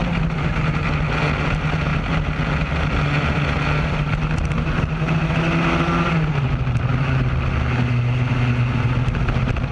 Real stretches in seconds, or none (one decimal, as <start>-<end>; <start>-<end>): 0.0-9.7